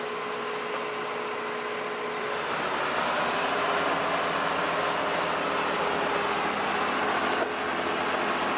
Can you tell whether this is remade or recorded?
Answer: recorded